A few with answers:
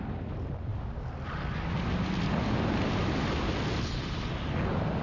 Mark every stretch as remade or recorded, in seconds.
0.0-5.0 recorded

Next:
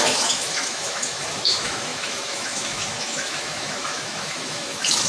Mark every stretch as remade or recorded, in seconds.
0.0-5.1 remade

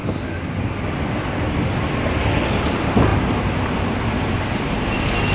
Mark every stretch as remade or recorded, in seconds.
0.0-5.3 recorded

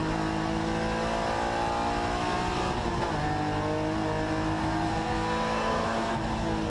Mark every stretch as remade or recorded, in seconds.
0.0-4.6 recorded; 4.6-6.2 remade; 6.2-6.7 recorded

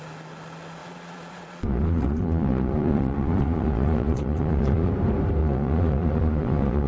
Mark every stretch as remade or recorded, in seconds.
0.0-0.8 recorded; 0.8-4.9 remade; 4.9-5.4 recorded; 5.4-6.9 remade

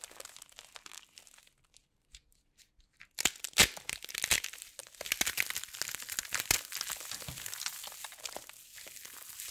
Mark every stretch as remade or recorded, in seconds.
0.0-9.5 recorded

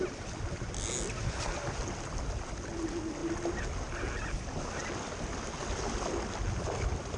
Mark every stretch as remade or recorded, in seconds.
0.0-7.2 recorded